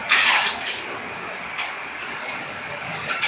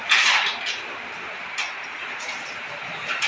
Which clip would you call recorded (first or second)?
second